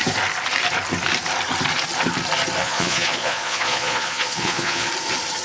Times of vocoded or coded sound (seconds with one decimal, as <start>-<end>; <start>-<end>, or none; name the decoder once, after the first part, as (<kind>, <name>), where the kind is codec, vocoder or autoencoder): 2.6-4.9 (vocoder, Vocos)